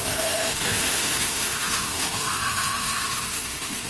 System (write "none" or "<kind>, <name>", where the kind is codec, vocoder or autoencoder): autoencoder, DAC-VAE